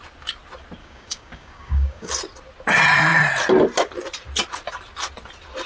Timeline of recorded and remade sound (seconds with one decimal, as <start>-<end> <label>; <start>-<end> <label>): 0.0-0.8 recorded; 0.8-2.1 remade; 2.1-5.7 recorded